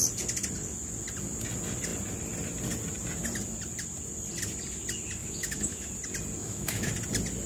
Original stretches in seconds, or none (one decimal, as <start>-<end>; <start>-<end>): 0.0-5.2; 5.9-6.4; 6.9-7.5